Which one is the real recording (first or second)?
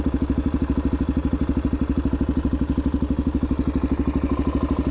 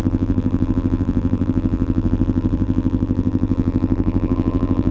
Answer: first